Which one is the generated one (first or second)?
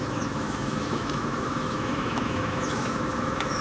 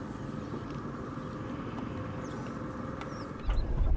first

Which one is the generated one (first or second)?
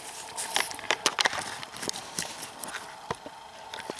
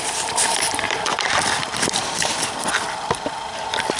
second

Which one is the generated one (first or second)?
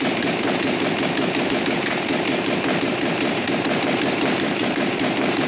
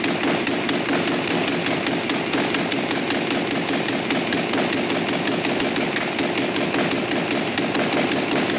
first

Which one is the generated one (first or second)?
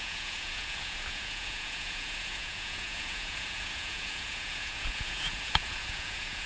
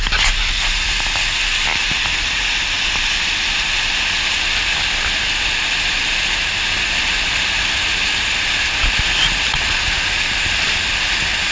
first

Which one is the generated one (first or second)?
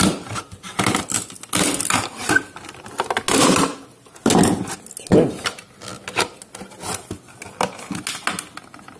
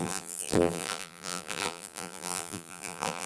second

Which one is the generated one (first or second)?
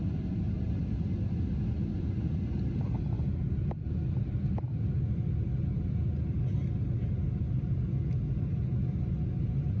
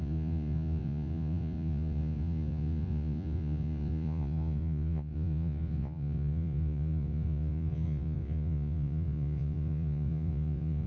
second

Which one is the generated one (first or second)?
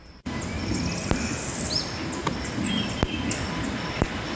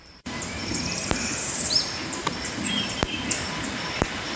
second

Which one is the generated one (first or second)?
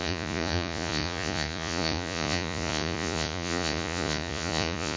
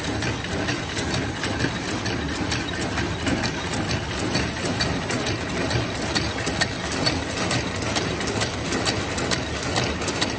first